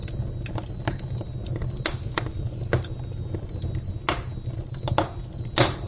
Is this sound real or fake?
real